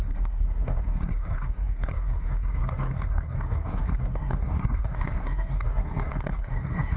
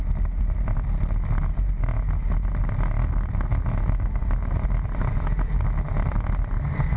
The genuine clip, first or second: second